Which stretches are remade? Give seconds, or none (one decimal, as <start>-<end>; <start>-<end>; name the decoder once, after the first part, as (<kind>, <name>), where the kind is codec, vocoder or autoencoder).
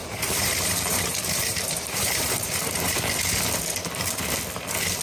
0.0-3.0 (vocoder, BigVGAN v2)